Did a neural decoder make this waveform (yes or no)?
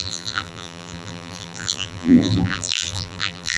yes